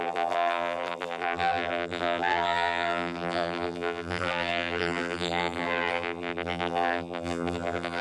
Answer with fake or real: fake